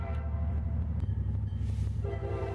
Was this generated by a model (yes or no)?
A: yes